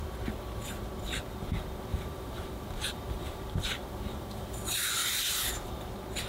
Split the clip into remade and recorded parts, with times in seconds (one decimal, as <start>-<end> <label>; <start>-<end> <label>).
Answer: 0.0-1.9 recorded; 1.9-4.4 remade; 4.4-5.0 recorded; 5.0-5.7 remade; 5.7-6.3 recorded